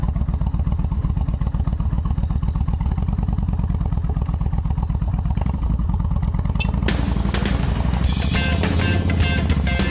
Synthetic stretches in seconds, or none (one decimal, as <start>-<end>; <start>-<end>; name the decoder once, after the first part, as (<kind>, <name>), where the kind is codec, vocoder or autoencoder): none